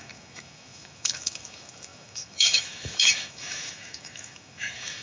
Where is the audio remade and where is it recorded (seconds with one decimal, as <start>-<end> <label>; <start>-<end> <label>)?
0.0-5.0 remade